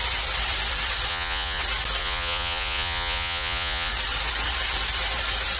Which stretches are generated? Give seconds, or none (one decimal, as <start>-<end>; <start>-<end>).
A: 1.1-1.6; 2.0-3.9